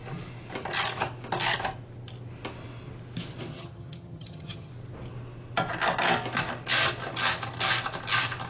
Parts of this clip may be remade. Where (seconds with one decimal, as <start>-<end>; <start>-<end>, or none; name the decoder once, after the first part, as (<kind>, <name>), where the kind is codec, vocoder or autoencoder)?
3.5-4.7 (vocoder, HiFi-GAN)